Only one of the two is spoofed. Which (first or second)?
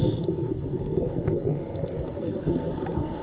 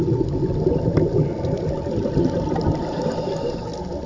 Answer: first